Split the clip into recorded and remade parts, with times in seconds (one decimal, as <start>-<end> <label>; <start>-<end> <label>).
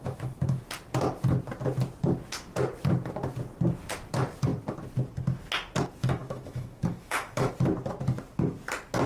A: 0.0-0.6 remade; 0.6-6.0 recorded; 6.0-7.5 remade; 7.5-9.1 recorded